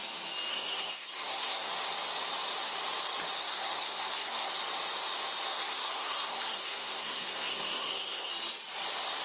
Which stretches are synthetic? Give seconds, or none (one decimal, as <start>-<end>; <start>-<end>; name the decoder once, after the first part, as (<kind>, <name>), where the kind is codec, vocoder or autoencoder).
0.5-1.7 (codec, SNAC); 3.4-4.5; 5.5-8.3